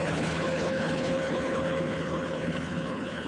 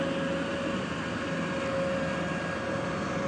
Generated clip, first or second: first